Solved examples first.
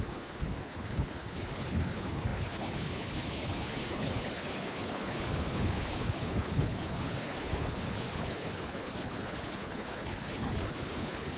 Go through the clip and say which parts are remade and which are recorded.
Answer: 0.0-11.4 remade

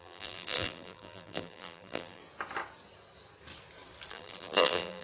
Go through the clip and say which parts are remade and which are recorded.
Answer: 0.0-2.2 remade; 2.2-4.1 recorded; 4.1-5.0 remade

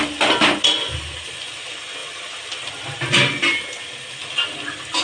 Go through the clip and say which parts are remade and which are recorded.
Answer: 0.0-5.0 recorded

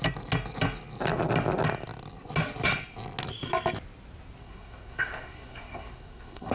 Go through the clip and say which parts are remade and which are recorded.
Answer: 0.0-4.4 recorded; 4.4-6.5 remade

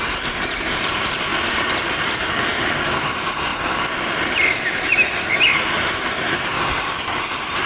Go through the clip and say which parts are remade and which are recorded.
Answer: 0.0-1.3 remade; 1.3-3.0 recorded; 3.0-3.5 remade; 3.5-5.8 recorded; 5.8-6.5 remade; 6.5-7.2 recorded; 7.2-7.7 remade